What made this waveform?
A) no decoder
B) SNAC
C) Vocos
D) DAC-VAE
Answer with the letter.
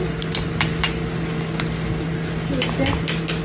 A